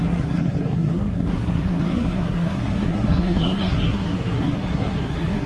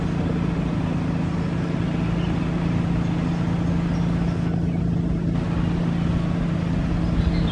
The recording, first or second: second